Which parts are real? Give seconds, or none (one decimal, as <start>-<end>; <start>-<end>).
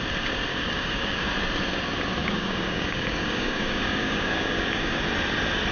0.0-0.5; 1.3-2.2; 5.0-5.7